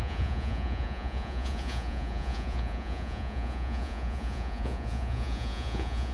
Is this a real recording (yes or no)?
no